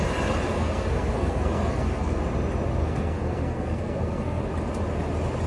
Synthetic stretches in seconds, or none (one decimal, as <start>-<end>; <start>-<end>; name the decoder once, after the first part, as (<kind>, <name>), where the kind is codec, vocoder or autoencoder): 0.5-2.2 (codec, SNAC); 2.8-4.4

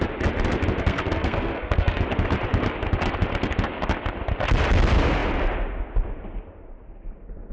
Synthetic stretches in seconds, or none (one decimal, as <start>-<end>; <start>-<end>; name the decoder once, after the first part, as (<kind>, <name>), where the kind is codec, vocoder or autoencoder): 0.8-2.0 (codec, SNAC)

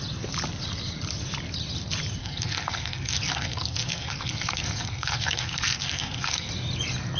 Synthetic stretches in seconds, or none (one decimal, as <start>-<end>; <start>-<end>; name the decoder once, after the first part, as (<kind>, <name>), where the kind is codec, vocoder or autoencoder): 2.2-6.5 (codec, SNAC)

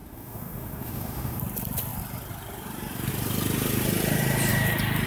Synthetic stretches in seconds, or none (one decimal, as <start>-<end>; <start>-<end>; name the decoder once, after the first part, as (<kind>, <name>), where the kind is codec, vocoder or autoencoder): 0.0-1.4 (autoencoder, DAC-VAE)

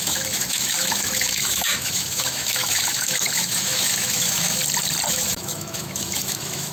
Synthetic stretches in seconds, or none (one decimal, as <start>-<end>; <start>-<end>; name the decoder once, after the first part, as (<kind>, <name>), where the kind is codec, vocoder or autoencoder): 0.0-4.6 (autoencoder, DAC-VAE); 5.1-6.7

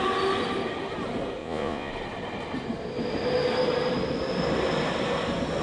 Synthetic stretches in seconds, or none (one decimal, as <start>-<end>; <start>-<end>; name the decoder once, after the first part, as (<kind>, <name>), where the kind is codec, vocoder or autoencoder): 1.4-1.9 (vocoder, Vocos)

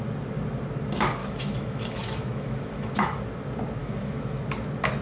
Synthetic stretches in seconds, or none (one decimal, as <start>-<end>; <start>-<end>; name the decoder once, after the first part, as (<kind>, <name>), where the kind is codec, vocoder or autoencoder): 1.2-3.2 (autoencoder, DAC-VAE); 3.8-4.4

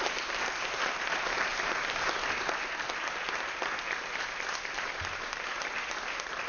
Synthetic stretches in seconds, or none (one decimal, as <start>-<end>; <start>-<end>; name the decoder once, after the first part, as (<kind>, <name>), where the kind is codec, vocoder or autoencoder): none